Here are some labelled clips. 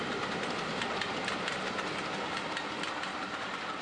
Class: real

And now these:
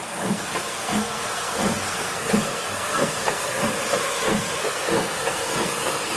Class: fake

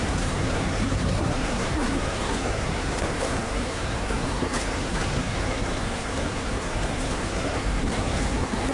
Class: fake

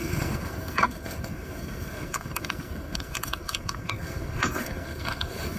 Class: fake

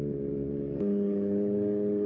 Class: fake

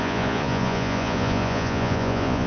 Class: fake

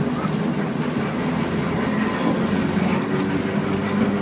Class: real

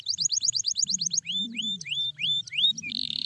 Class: real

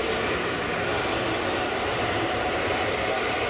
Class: real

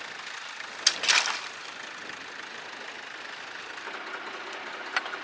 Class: real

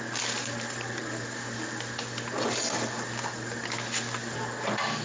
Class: real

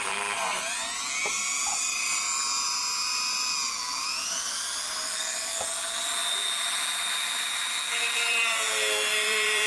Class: fake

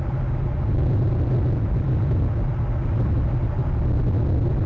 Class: real